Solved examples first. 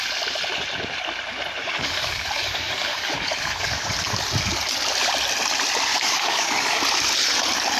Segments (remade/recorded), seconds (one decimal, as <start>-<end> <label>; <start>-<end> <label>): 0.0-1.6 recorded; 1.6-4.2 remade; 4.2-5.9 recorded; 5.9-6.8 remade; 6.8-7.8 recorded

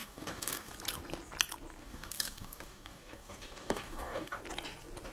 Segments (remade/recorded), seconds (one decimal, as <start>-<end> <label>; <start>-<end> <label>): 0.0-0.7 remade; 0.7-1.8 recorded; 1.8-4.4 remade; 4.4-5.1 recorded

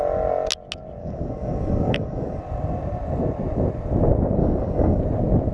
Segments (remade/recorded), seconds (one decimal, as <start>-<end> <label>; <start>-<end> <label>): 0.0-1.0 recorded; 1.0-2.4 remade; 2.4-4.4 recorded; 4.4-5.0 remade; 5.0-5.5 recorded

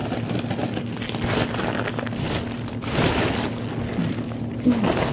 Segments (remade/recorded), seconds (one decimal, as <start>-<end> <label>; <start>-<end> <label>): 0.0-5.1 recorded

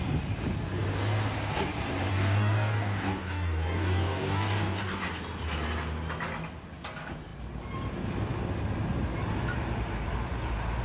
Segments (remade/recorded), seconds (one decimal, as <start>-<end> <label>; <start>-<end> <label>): 0.0-2.1 recorded; 2.1-5.0 remade; 5.0-10.8 recorded

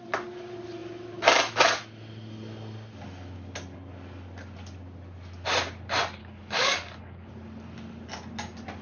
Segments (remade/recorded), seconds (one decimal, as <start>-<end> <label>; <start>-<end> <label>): 0.0-6.2 recorded; 6.2-7.3 remade; 7.3-8.8 recorded

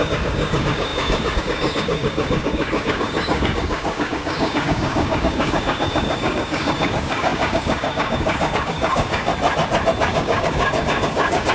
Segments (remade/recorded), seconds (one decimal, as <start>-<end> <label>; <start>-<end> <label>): 0.0-9.3 remade; 9.3-10.0 recorded; 10.0-11.5 remade

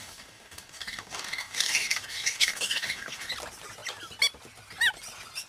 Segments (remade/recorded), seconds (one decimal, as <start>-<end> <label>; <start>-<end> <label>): 0.0-3.3 remade; 3.3-5.5 recorded